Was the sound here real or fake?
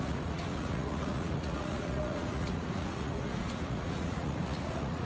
fake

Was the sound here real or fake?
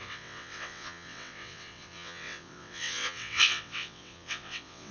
fake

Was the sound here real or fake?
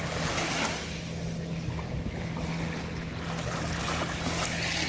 real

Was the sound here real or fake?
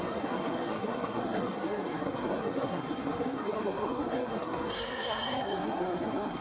fake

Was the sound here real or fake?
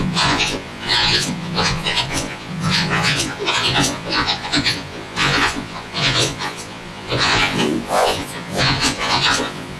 fake